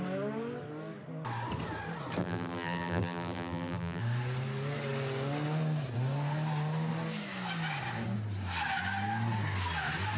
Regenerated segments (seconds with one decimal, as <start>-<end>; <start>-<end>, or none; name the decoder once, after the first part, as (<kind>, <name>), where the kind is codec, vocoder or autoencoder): 2.2-4.0 (vocoder, BigVGAN v2)